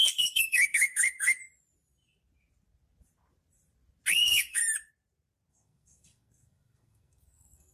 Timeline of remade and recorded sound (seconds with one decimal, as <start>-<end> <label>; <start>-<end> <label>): 0.0-1.4 remade; 1.4-4.1 recorded; 4.1-4.6 remade; 4.6-5.5 recorded; 5.5-7.7 remade